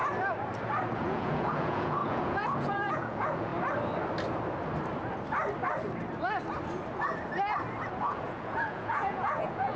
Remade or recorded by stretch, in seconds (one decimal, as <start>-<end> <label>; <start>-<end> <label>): 0.0-1.0 recorded; 1.0-3.5 remade; 3.5-8.0 recorded; 8.0-9.8 remade